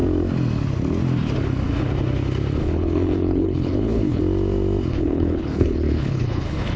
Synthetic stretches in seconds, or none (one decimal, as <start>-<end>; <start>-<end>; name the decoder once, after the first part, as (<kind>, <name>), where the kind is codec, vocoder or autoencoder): 2.6-4.2 (codec, HILCodec); 4.9-6.8